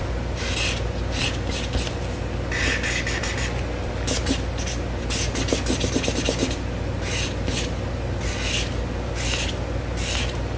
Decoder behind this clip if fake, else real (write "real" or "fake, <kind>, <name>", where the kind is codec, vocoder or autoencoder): real